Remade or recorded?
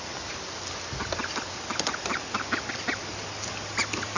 recorded